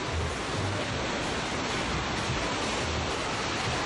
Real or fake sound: real